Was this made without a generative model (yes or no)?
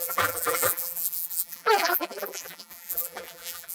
no